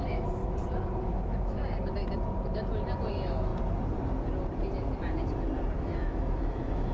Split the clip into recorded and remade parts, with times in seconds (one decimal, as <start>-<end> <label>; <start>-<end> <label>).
0.0-0.4 remade; 0.4-1.0 recorded; 1.0-1.6 remade; 1.6-3.1 recorded; 3.1-3.5 remade; 3.5-5.8 recorded; 5.8-6.9 remade